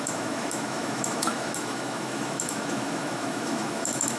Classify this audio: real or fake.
fake